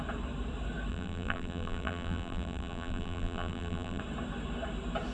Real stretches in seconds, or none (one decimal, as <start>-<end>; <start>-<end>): 0.0-0.9; 4.0-5.1